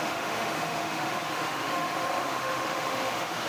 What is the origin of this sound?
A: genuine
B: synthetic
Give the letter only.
B